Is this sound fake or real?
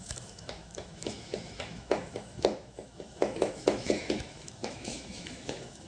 fake